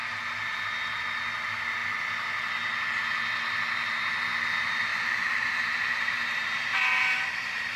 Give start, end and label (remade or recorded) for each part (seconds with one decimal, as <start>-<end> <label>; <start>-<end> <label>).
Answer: 0.0-4.9 recorded; 4.9-7.8 remade